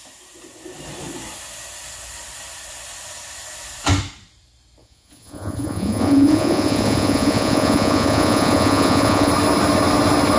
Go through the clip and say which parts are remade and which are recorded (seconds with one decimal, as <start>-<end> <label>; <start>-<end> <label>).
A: 0.0-4.8 recorded; 4.8-9.3 remade; 9.3-10.4 recorded